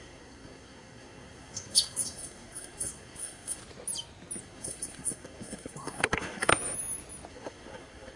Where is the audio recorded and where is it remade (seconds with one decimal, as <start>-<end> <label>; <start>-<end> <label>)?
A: 0.0-3.6 remade; 3.6-4.4 recorded; 4.4-6.5 remade; 6.5-7.3 recorded; 7.3-8.2 remade